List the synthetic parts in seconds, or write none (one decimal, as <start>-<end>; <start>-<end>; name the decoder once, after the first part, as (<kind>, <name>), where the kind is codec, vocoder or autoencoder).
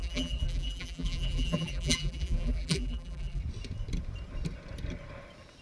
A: 0.0-3.4 (vocoder, BigVGAN v2)